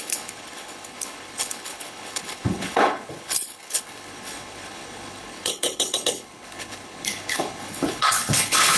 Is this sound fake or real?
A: fake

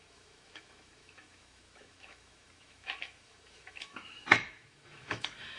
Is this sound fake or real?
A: fake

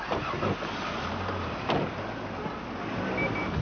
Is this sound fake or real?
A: real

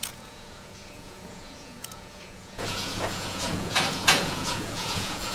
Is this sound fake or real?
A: fake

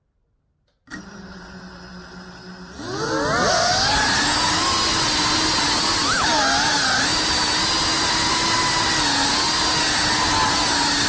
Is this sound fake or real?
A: real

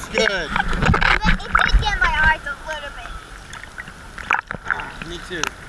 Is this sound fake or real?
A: real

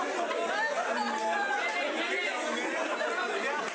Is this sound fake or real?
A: real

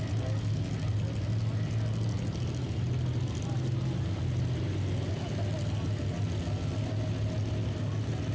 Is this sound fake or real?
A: real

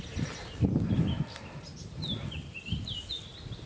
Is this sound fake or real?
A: real